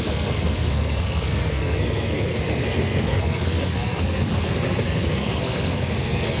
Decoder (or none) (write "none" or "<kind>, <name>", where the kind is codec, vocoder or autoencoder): codec, SNAC